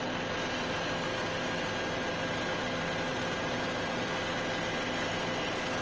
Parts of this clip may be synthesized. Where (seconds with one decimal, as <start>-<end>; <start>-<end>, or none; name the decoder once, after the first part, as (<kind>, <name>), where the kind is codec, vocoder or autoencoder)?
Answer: 3.1-4.1 (vocoder, BigVGAN v2)